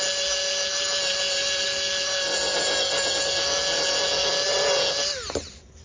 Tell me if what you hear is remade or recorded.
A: recorded